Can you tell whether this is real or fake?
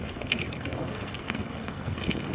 fake